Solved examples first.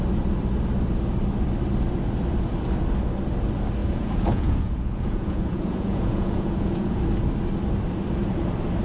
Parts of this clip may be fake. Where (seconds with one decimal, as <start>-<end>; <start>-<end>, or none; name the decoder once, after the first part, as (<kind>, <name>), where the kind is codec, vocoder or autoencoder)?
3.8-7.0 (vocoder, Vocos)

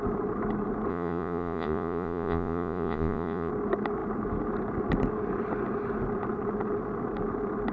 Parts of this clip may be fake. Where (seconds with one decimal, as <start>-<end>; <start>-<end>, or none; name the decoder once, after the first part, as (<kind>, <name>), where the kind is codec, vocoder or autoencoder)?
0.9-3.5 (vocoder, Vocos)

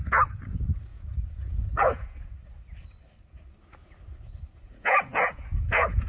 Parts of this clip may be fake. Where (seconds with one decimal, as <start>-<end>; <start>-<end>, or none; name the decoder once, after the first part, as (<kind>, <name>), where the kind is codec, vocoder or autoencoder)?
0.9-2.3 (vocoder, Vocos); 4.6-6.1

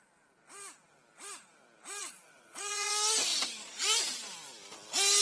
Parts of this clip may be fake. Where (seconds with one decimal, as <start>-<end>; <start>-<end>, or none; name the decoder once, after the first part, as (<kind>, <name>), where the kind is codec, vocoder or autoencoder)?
2.0-2.9 (vocoder, Vocos)

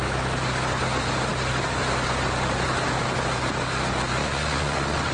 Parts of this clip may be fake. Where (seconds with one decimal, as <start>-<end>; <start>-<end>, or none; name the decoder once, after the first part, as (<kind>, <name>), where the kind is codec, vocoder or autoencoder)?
4.2-5.1 (vocoder, Vocos)